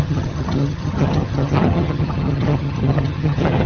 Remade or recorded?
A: remade